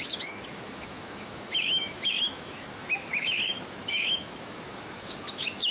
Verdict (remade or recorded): remade